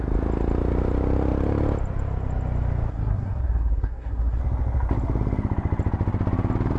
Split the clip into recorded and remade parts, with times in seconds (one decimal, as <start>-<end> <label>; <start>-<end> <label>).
0.0-2.9 recorded; 2.9-4.4 remade; 4.4-6.8 recorded